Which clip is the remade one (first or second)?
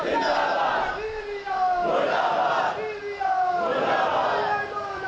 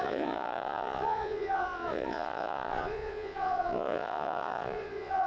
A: second